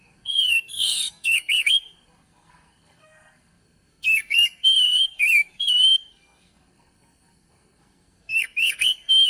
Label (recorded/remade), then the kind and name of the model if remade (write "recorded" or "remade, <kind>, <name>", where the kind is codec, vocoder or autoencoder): remade, codec, SNAC